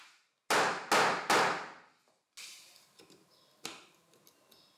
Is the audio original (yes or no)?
yes